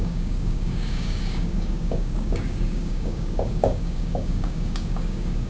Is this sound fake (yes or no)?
yes